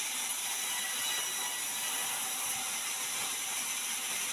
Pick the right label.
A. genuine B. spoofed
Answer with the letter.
A